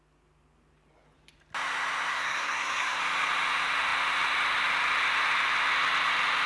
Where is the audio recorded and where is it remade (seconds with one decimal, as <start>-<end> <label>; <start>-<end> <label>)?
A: 0.0-2.1 recorded; 2.1-3.0 remade; 3.0-6.5 recorded